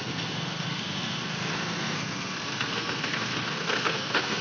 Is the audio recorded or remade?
remade